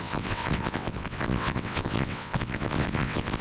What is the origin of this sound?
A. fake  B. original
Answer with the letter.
A